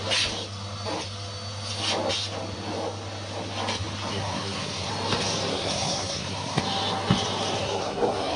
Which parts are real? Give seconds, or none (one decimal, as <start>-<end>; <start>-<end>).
0.0-4.1; 4.9-5.5; 6.6-7.6